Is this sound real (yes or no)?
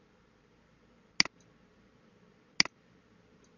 yes